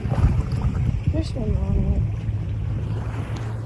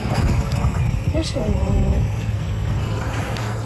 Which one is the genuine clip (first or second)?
first